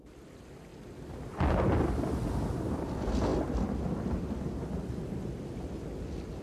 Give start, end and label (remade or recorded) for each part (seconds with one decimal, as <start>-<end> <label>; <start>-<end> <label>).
0.0-6.4 recorded